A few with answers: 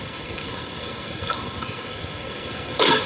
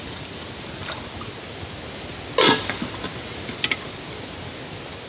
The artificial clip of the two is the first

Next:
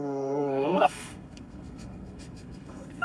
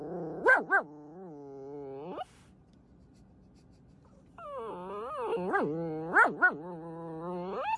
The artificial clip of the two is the first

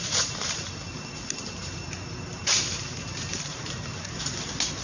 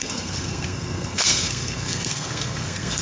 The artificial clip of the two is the second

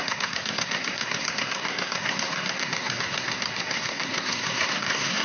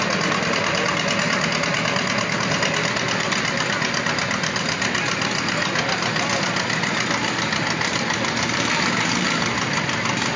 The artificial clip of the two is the first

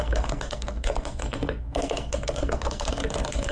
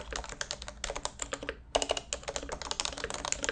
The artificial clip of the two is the first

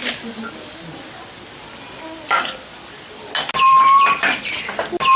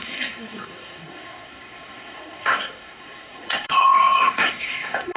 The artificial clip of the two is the second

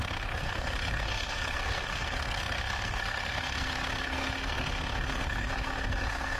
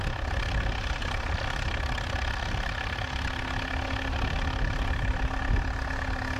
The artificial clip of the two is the first